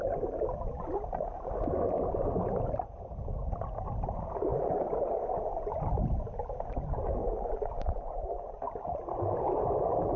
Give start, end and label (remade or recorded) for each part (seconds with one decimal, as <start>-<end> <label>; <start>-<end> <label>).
0.0-4.5 recorded; 4.5-5.5 remade; 5.5-7.2 recorded; 7.2-7.7 remade; 7.7-10.2 recorded